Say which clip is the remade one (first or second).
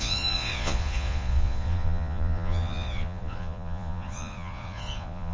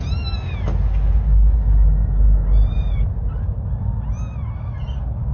first